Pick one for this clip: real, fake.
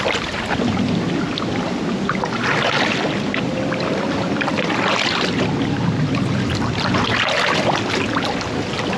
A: real